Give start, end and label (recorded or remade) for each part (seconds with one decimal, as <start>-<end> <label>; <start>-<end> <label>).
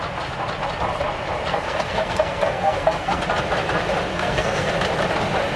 0.0-1.5 recorded; 1.5-3.2 remade; 3.2-4.1 recorded; 4.1-4.7 remade; 4.7-5.6 recorded